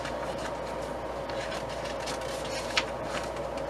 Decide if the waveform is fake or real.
real